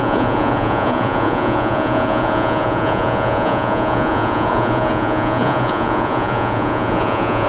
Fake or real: fake